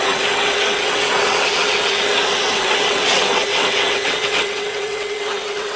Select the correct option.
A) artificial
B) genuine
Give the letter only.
A